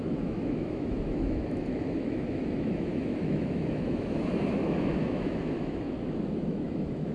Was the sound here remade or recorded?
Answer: remade